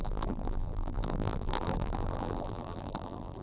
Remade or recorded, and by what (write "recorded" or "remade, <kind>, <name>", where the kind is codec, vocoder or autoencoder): remade, vocoder, BigVGAN v2